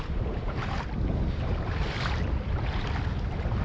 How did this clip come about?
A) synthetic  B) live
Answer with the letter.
B